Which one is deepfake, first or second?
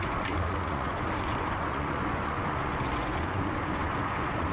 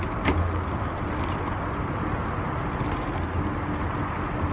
first